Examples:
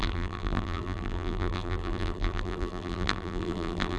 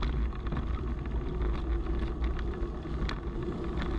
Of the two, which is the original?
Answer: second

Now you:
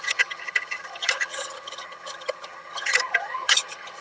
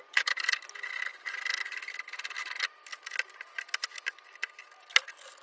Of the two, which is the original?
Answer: second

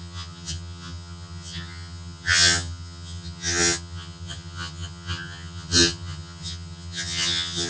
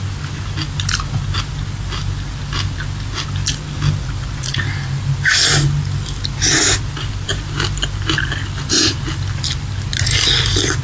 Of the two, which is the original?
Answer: second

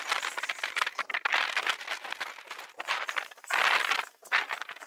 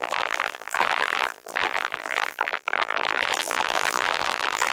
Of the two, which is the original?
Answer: first